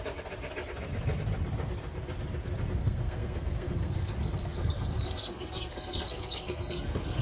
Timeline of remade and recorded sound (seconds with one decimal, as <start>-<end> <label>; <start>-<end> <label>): 0.0-2.8 recorded; 2.8-7.2 remade